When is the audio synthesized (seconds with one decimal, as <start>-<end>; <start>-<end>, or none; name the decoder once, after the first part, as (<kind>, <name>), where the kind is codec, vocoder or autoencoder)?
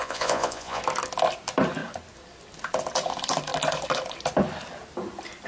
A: 0.0-0.8 (vocoder, Vocos)